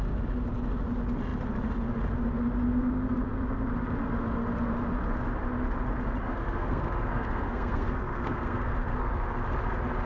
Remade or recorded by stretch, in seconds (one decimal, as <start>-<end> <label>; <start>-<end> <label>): 0.0-6.2 recorded; 6.2-9.1 remade; 9.1-10.1 recorded